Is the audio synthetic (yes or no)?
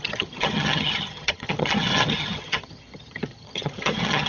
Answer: yes